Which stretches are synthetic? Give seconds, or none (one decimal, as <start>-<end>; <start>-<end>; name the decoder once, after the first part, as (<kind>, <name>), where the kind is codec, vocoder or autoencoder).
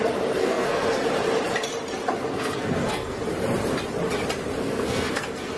0.4-1.0 (codec, SNAC); 2.3-3.2; 4.6-5.6